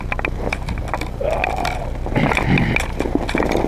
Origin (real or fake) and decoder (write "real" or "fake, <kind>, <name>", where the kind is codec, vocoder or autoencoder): real